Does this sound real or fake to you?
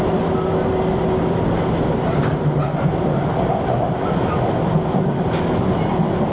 real